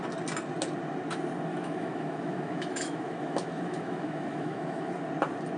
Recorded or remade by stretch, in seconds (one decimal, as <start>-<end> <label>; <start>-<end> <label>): 0.0-1.5 recorded; 1.5-4.9 remade; 4.9-5.6 recorded